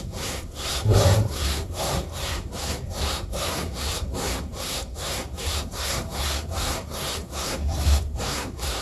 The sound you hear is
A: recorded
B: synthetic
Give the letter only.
B